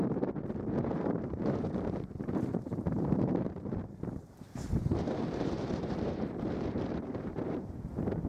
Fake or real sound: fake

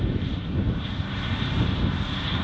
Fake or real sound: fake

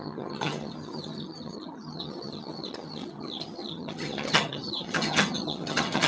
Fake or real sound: fake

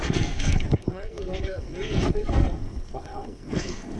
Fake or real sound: fake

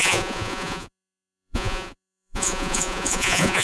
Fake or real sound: fake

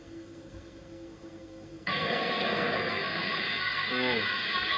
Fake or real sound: fake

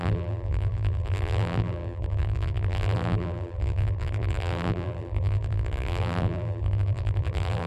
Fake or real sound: fake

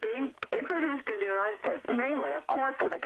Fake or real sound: fake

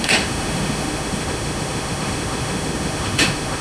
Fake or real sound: fake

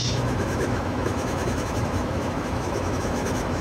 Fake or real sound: fake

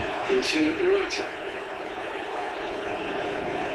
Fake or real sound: fake